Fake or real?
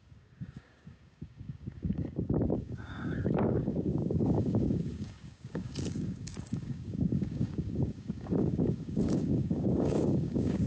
fake